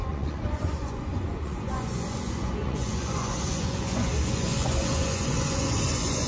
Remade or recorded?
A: remade